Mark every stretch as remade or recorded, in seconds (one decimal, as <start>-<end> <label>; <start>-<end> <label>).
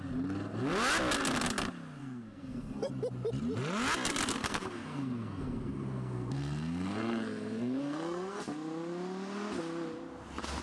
0.0-2.0 recorded; 2.0-2.9 remade; 2.9-4.4 recorded; 4.4-8.4 remade; 8.4-10.6 recorded